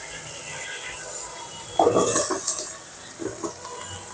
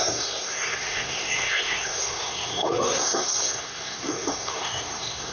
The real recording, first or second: first